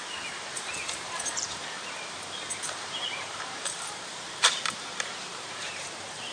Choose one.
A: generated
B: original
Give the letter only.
A